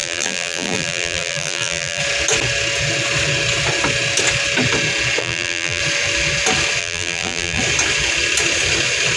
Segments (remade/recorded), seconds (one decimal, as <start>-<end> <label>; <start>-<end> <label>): 0.0-2.0 remade; 2.0-5.2 recorded; 5.2-5.8 remade; 5.8-6.8 recorded; 6.8-7.6 remade; 7.6-9.2 recorded